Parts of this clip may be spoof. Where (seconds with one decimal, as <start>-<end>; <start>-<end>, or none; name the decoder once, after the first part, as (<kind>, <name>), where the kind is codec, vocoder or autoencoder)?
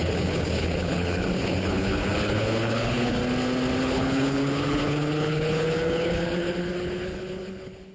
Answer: 0.0-3.2 (codec, HILCodec); 3.8-7.9